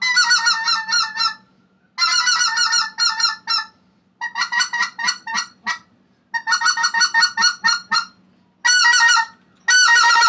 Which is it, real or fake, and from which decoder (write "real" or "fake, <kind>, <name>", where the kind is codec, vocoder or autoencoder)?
real